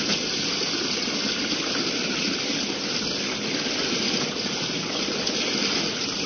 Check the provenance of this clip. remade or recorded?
recorded